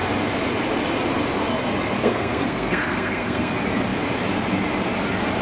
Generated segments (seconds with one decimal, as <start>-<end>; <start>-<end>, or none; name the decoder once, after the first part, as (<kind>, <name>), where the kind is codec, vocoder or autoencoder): 2.0-3.5 (codec, SNAC)